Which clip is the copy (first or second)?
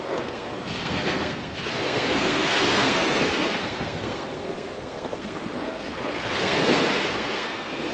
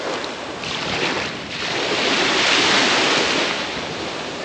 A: first